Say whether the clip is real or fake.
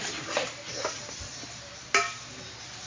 real